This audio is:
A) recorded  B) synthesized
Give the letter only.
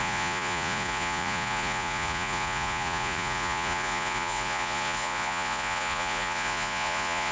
B